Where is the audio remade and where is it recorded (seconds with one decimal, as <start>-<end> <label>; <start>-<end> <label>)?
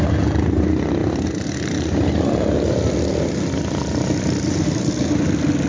0.0-5.7 recorded